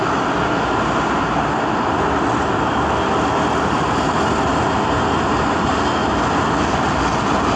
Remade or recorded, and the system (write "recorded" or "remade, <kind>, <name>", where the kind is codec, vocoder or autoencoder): recorded